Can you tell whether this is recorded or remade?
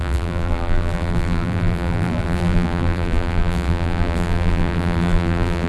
remade